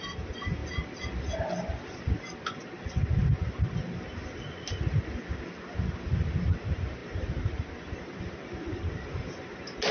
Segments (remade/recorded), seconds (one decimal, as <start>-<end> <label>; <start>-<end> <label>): 0.0-9.9 recorded